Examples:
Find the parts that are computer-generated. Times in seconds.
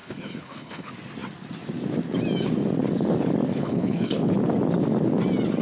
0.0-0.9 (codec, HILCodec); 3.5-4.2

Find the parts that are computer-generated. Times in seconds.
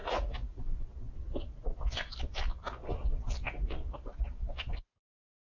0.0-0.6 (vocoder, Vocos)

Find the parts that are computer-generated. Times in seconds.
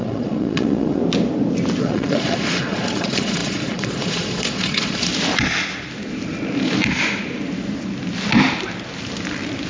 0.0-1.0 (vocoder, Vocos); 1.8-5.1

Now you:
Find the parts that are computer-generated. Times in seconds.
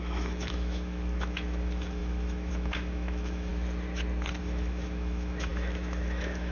0.0-3.5 (autoencoder, DAC-VAE); 4.4-6.5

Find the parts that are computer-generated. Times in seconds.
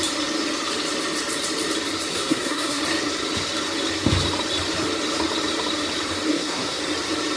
2.1-2.8 (codec, SNAC); 6.3-6.8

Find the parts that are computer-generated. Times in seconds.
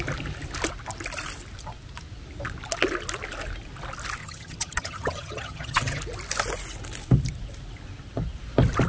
4.2-6.0 (vocoder, HiFi-GAN)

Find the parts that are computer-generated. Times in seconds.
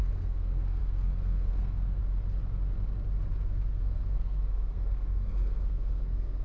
0.0-2.0 (codec, SNAC); 3.8-6.4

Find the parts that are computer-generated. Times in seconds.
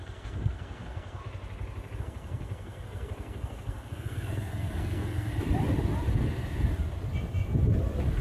0.0-1.2 (codec, SNAC); 2.0-5.3